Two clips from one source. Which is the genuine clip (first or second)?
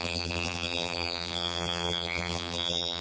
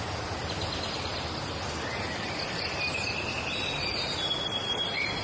second